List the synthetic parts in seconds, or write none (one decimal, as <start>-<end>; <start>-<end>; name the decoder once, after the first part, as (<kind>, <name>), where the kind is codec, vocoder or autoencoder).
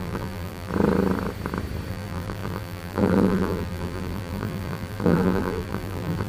0.0-0.7 (vocoder, BigVGAN v2); 1.9-6.3